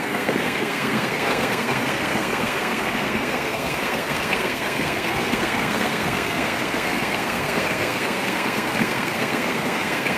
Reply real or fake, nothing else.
fake